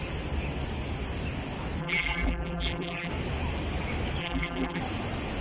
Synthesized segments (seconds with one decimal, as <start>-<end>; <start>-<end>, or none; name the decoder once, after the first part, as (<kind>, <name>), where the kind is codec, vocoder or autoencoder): 1.8-3.1 (vocoder, BigVGAN v2); 4.2-4.8

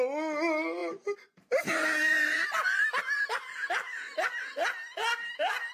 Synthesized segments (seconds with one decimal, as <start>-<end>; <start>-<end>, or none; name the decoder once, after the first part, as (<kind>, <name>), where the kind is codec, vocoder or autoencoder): 0.8-2.5 (vocoder, BigVGAN v2)

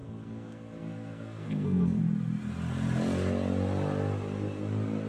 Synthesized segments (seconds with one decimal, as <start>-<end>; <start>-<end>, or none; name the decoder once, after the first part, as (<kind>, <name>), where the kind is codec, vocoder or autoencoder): 0.0-2.0 (codec, SNAC)

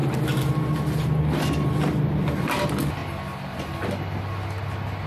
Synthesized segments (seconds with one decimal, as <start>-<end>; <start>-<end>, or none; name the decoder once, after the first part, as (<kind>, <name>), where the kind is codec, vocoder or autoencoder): none

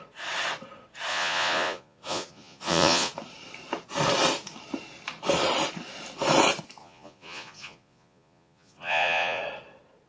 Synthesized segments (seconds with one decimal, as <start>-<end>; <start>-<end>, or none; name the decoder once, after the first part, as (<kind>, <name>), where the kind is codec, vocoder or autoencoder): 1.1-3.1 (vocoder, Vocos); 6.8-9.4

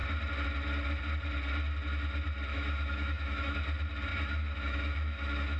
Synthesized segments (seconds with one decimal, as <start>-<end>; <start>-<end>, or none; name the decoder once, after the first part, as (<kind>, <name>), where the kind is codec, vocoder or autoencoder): 2.5-3.6 (autoencoder, DAC-VAE); 4.1-5.6